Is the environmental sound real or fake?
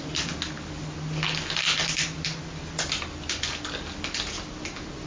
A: real